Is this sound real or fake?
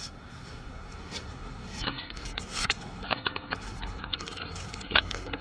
fake